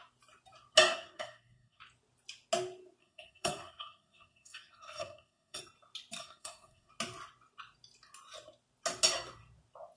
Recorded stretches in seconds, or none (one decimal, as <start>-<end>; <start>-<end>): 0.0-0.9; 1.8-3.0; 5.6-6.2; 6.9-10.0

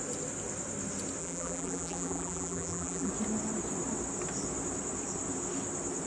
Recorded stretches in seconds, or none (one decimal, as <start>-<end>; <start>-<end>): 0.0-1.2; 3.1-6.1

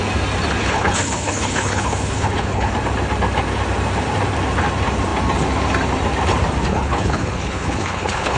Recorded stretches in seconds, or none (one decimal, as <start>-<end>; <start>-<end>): 0.0-0.6; 2.7-6.7

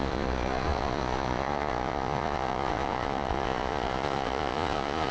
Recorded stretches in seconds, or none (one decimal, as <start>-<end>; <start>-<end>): none

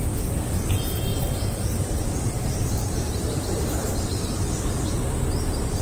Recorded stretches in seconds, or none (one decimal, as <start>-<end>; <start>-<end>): 0.0-1.1; 4.2-5.8

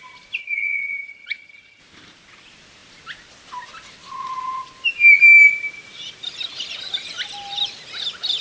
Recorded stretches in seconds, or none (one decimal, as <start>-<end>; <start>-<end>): 0.0-0.4; 1.8-8.4

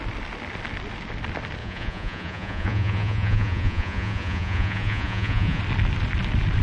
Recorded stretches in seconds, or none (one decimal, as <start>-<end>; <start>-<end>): 0.0-1.6; 5.6-6.6

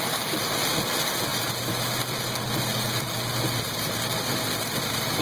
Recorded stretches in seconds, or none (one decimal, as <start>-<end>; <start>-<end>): 0.0-5.2